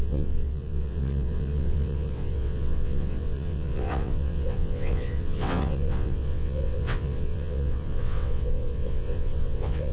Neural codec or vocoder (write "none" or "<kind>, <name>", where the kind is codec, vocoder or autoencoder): vocoder, WaveNeXt